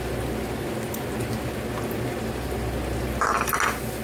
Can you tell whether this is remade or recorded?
recorded